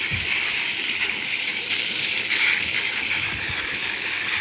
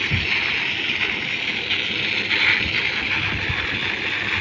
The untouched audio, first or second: second